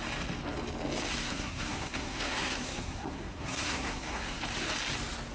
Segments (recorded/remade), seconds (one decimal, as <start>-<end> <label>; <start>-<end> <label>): 0.0-1.2 recorded; 1.2-4.4 remade; 4.4-5.3 recorded